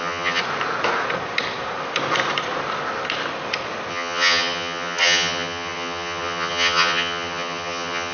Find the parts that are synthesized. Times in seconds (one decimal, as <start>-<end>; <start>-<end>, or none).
0.0-0.4; 3.9-8.1